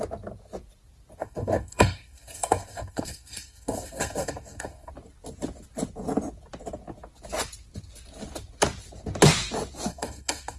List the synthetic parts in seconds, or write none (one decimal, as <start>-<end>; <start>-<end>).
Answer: 1.2-4.9; 9.9-10.6